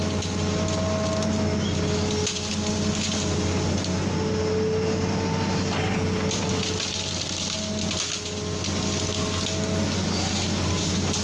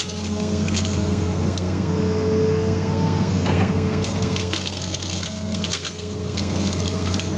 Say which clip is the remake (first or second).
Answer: second